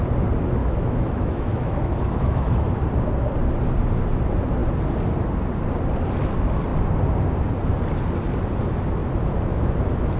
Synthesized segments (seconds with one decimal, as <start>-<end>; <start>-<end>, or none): 0.6-2.7